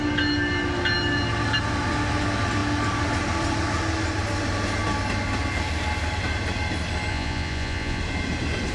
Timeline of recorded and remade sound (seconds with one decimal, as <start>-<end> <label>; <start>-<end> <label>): 0.0-7.1 recorded; 7.1-8.0 remade; 8.0-8.7 recorded